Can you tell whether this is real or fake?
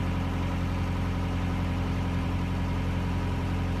fake